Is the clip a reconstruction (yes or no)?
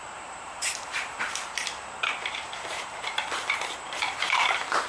yes